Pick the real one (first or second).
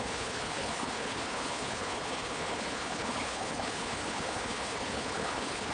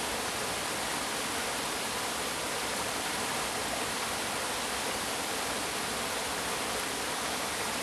second